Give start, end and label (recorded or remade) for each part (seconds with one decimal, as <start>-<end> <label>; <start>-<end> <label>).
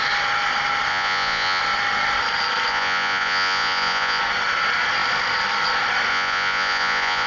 0.0-0.9 recorded; 0.9-1.6 remade; 1.6-2.7 recorded; 2.7-4.2 remade; 4.2-6.1 recorded; 6.1-7.3 remade